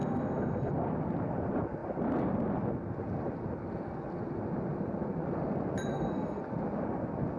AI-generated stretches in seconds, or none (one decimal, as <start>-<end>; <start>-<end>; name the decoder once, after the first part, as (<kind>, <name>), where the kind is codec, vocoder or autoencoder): 0.0-0.7 (codec, SNAC); 5.9-6.4